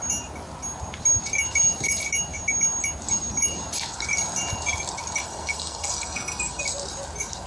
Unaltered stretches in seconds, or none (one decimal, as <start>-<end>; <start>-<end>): 0.0-5.2; 6.6-7.5